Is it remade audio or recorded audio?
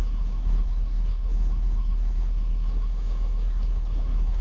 remade